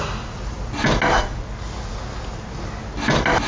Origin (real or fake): real